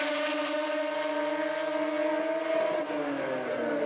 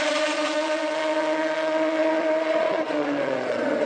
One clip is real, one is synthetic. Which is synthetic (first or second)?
second